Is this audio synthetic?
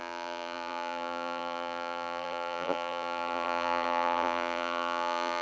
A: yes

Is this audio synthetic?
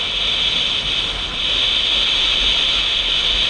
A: no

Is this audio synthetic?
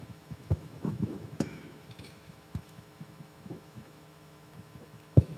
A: yes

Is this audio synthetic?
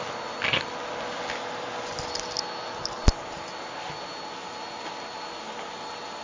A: no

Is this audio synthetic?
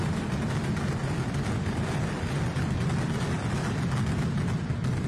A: no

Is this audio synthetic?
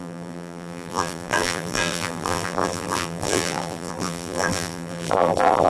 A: yes